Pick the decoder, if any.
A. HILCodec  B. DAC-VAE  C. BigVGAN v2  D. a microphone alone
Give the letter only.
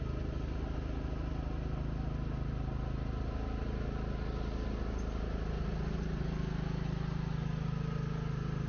D